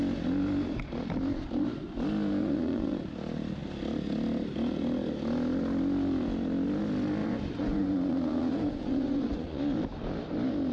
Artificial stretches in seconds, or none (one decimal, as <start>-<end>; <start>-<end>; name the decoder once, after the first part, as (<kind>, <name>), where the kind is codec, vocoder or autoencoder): 2.4-3.0 (vocoder, Vocos); 7.2-9.6